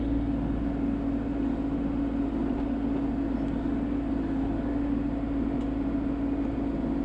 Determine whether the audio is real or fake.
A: real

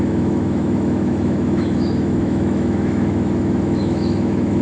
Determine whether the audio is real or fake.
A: fake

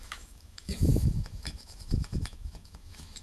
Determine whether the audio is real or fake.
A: fake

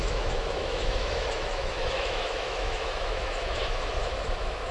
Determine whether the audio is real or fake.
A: fake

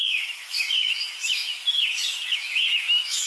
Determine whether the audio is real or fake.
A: fake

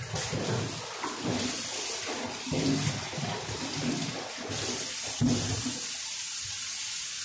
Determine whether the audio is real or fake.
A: real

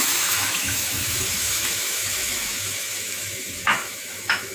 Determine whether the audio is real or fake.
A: fake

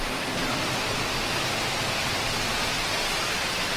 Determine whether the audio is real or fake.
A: real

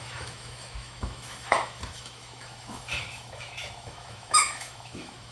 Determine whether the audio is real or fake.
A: fake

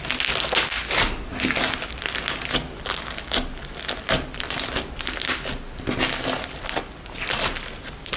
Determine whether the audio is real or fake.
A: real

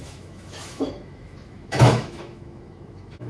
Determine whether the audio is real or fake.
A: fake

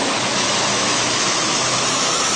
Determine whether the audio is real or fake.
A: fake